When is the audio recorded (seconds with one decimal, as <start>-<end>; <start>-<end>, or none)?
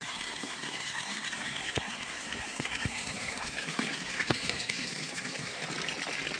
5.6-6.4